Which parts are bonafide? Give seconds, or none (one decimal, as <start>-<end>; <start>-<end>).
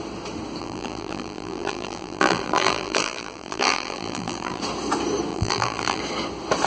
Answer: 0.0-0.6; 4.6-5.3; 6.0-6.7